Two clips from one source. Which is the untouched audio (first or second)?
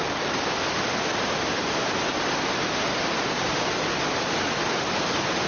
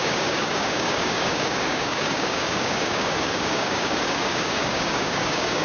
first